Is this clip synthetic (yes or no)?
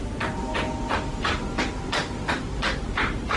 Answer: no